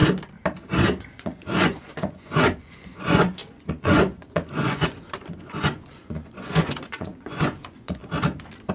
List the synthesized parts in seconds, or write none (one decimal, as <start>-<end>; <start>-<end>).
1.1-8.0